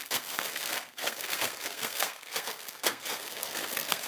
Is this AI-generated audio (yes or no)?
yes